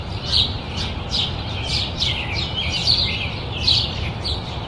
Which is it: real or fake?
fake